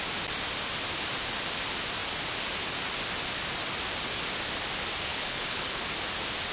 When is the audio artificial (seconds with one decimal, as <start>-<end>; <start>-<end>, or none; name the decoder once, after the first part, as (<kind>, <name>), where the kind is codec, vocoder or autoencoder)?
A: 5.1-5.8 (codec, HILCodec)